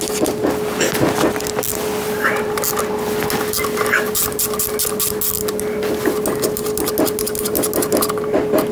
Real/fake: real